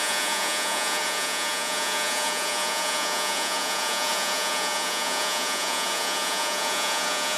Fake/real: fake